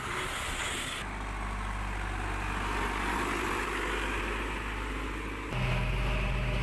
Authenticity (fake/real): real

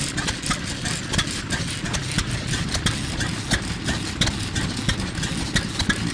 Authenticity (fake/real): real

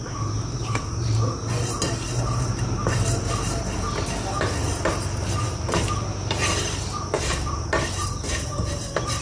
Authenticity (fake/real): fake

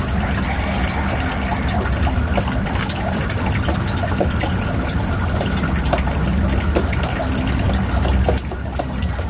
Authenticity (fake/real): real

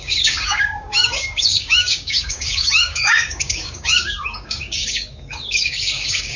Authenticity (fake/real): fake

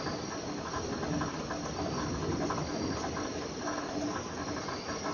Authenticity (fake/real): real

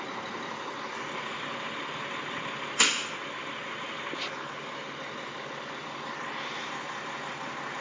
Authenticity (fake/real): real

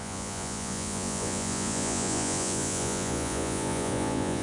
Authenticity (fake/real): fake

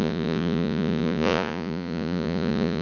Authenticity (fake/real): fake